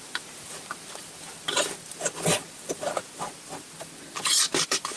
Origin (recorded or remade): remade